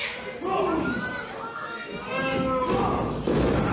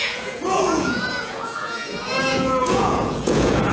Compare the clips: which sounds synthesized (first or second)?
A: second